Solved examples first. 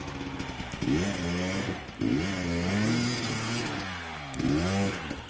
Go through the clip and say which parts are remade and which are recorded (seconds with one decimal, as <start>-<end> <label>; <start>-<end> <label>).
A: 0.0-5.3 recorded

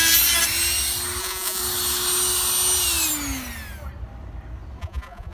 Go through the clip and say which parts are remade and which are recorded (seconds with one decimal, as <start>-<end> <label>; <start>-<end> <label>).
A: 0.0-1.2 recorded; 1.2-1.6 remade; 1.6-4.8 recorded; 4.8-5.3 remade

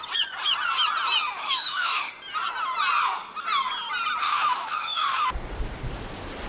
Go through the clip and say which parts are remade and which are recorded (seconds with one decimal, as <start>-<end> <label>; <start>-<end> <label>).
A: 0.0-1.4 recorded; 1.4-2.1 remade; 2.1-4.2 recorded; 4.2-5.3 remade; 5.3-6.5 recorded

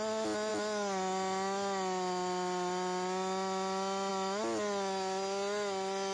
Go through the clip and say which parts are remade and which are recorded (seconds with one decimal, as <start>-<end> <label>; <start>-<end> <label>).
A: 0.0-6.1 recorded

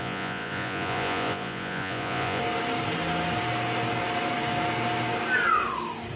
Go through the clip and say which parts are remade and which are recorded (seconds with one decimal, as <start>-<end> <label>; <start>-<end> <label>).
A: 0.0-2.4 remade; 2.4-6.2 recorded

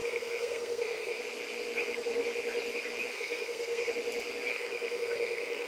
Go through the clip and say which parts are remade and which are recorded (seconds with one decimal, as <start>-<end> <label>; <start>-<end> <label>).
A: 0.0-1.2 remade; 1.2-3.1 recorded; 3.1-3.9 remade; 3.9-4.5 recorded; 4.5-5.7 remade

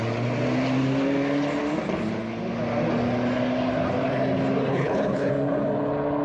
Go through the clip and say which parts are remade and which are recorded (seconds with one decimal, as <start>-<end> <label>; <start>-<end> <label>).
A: 0.0-4.7 recorded; 4.7-5.3 remade; 5.3-6.2 recorded

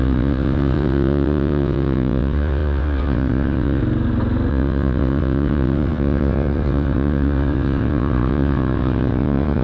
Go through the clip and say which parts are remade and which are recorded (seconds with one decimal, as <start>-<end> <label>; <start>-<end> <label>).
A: 0.0-3.8 remade; 3.8-4.5 recorded; 4.5-9.6 remade